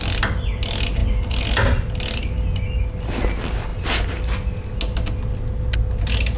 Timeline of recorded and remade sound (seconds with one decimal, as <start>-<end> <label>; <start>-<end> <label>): 0.0-6.4 recorded